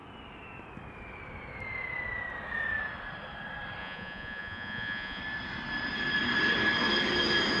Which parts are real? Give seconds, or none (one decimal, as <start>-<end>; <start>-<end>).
0.0-3.8; 5.2-7.6